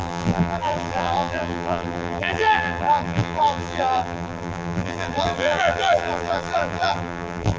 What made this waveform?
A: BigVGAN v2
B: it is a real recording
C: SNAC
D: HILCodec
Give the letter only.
A